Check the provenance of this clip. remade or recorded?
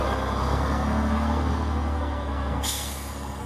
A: remade